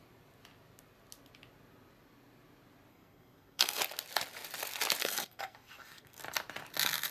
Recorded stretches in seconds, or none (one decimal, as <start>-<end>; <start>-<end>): 0.0-2.9; 3.8-5.0; 6.2-7.1